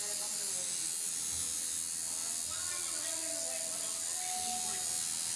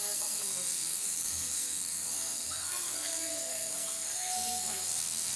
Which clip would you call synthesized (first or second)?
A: second